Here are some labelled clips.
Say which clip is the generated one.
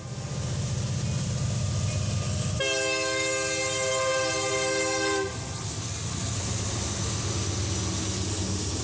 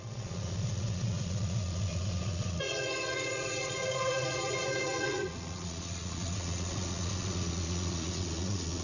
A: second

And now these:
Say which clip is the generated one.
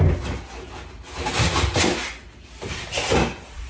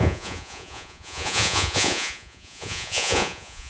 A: second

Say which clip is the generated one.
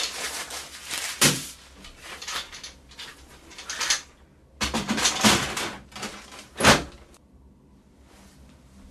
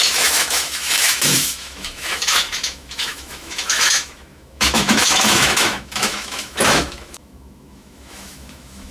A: second